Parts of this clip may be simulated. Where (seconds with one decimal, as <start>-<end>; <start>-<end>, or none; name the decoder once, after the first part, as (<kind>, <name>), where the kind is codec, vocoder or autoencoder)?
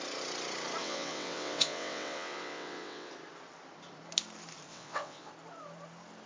0.8-3.1 (vocoder, WaveNeXt); 4.7-5.3